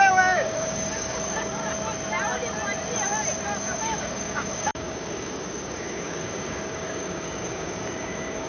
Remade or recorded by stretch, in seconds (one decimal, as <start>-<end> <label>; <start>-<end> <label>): 0.0-1.6 remade; 1.6-3.6 recorded; 3.6-8.5 remade